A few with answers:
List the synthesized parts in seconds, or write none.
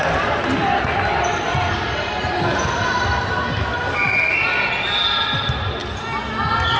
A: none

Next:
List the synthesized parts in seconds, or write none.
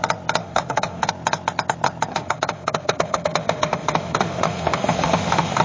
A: 0.4-1.1; 2.1-5.6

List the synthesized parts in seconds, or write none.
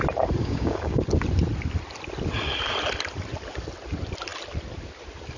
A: 0.4-1.0